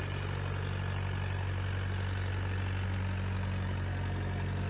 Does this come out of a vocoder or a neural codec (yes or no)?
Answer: no